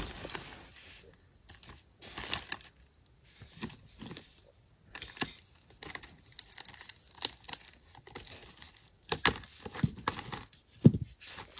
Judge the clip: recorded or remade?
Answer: recorded